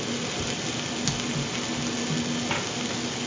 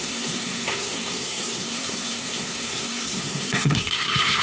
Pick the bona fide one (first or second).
first